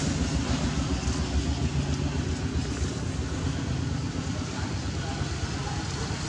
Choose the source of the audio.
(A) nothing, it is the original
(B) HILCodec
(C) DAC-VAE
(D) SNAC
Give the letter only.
A